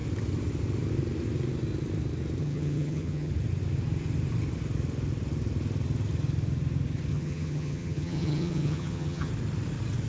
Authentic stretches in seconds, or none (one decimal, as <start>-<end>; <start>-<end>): 0.0-2.4; 3.3-7.1; 9.3-10.1